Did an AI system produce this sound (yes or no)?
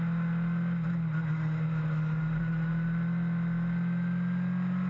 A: no